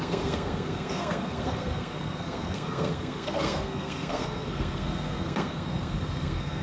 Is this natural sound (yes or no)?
no